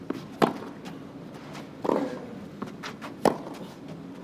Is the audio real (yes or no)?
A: yes